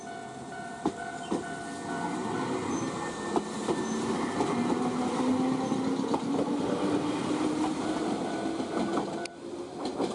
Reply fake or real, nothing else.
real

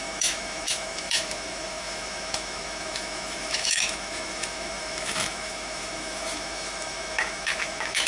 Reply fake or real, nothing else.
fake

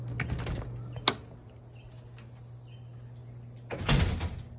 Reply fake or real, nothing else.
real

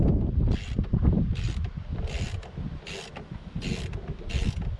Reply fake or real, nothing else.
real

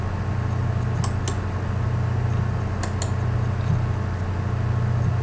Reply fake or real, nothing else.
real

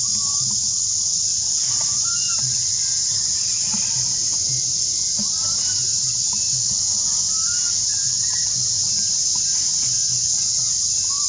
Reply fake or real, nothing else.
real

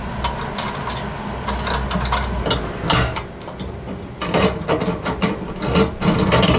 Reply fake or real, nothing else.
real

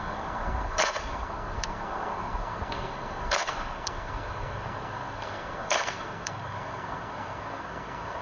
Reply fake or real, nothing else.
fake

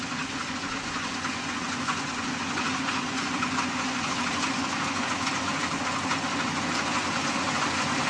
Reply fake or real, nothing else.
fake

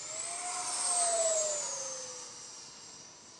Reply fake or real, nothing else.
real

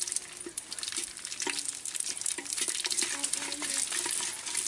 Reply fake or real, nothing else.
real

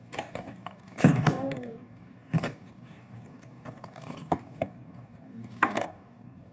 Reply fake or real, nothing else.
fake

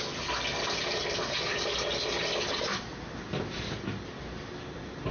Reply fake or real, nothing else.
real